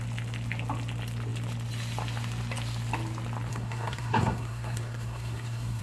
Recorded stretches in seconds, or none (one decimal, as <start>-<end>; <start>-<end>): 0.0-3.5